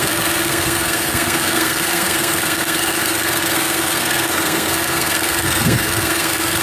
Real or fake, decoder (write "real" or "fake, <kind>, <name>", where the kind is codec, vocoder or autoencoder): fake, codec, SNAC